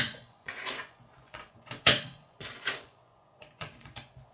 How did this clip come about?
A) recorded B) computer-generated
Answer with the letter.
B